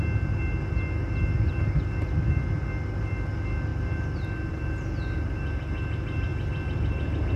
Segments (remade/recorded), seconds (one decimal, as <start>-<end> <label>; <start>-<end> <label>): 0.0-7.4 recorded

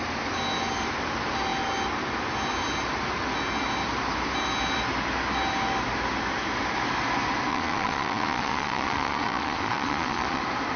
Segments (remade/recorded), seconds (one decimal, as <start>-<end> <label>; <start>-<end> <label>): 0.0-7.5 recorded; 7.5-10.4 remade; 10.4-10.8 recorded

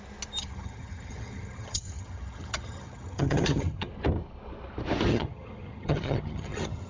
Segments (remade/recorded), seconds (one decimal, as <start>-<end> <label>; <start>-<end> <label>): 0.0-0.4 recorded; 0.4-3.9 remade; 3.9-5.1 recorded; 5.1-6.9 remade

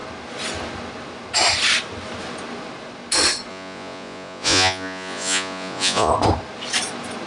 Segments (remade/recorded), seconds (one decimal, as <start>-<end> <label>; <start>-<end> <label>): 0.0-3.5 recorded; 3.5-6.1 remade; 6.1-7.3 recorded

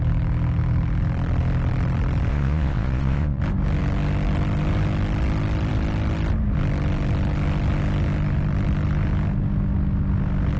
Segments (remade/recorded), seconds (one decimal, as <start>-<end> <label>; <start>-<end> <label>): 0.0-2.3 recorded; 2.3-3.4 remade; 3.4-10.6 recorded

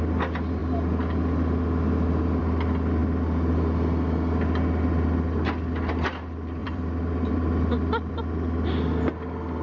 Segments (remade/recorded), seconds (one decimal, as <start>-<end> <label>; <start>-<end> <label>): 0.0-6.6 recorded; 6.6-8.1 remade; 8.1-9.6 recorded

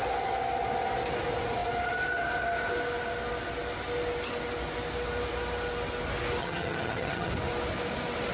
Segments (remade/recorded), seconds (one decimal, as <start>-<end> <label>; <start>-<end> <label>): 0.0-6.4 recorded; 6.4-7.3 remade; 7.3-8.3 recorded

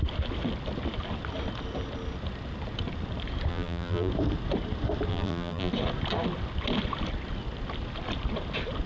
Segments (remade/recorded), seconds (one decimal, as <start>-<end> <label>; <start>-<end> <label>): 0.0-3.5 recorded; 3.5-4.1 remade; 4.1-5.1 recorded; 5.1-5.7 remade; 5.7-8.9 recorded